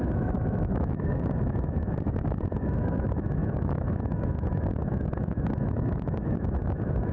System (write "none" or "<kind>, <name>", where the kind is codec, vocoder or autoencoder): autoencoder, DAC-VAE